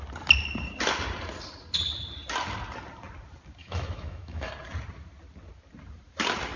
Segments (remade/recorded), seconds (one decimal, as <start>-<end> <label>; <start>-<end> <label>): 0.0-3.6 recorded; 3.6-4.5 remade; 4.5-6.6 recorded